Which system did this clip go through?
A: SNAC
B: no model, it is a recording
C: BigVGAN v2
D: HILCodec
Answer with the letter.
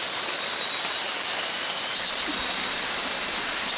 B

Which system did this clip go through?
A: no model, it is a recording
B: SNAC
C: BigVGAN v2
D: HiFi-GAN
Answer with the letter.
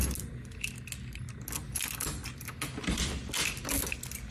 A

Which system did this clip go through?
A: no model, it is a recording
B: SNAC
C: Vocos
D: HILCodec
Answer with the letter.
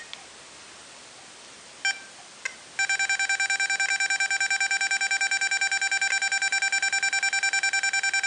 A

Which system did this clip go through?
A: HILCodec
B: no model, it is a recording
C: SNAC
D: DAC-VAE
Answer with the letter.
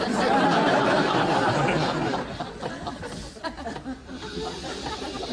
B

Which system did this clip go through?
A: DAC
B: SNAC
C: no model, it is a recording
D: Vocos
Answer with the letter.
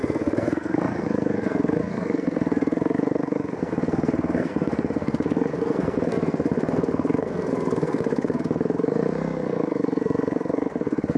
B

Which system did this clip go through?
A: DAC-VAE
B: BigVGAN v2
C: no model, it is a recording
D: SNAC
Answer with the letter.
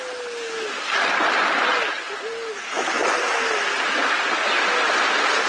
C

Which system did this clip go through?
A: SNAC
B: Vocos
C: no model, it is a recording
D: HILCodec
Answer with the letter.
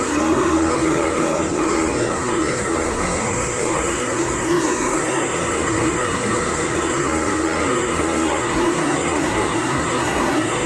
A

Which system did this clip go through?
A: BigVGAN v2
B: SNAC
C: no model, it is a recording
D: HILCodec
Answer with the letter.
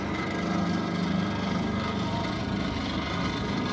C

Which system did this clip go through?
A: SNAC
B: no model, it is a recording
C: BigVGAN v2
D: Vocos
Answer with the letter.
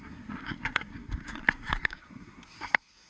A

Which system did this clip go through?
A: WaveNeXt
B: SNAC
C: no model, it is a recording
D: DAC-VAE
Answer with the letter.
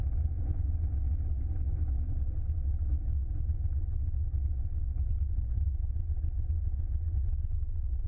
C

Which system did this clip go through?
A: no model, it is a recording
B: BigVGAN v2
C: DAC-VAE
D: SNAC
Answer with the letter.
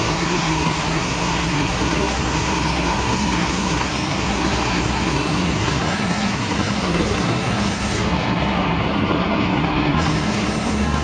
D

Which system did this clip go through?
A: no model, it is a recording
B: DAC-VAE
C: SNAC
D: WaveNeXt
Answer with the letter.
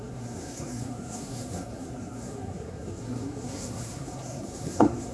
C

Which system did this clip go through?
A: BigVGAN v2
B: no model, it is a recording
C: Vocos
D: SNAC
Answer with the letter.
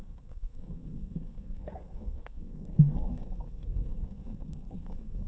D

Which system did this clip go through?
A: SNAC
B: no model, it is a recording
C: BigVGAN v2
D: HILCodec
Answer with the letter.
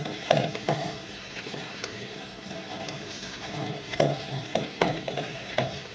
A